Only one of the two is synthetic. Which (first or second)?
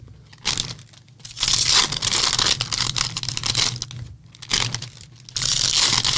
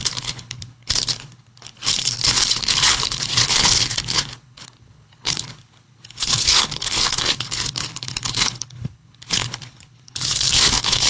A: second